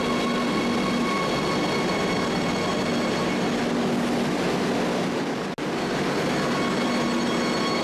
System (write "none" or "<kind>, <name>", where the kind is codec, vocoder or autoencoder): none